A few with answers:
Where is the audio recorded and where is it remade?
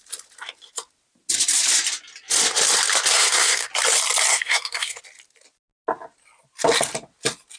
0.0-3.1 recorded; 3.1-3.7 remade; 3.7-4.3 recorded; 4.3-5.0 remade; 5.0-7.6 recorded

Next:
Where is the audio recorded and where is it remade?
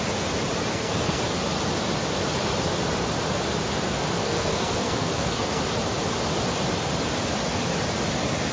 0.0-0.7 recorded; 0.7-1.2 remade; 1.2-4.2 recorded; 4.2-5.6 remade; 5.6-8.5 recorded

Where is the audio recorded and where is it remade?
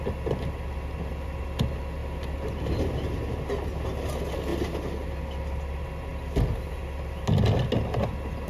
0.0-8.5 recorded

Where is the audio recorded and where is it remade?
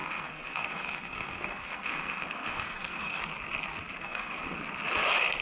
0.0-3.2 remade; 3.2-4.0 recorded; 4.0-4.6 remade; 4.6-5.4 recorded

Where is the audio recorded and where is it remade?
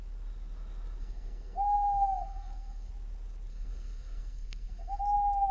0.0-1.0 recorded; 1.0-2.9 remade; 2.9-3.5 recorded; 3.5-5.0 remade; 5.0-5.5 recorded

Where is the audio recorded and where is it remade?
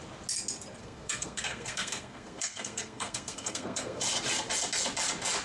0.0-0.8 recorded; 0.8-4.0 remade; 4.0-5.4 recorded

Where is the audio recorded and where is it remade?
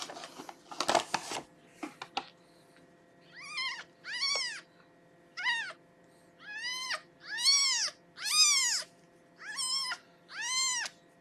0.0-11.2 recorded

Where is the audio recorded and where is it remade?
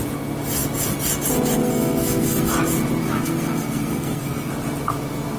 0.0-1.6 recorded; 1.6-2.5 remade; 2.5-3.0 recorded; 3.0-4.5 remade; 4.5-5.4 recorded